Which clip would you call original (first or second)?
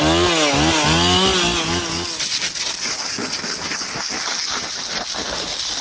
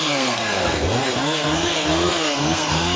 first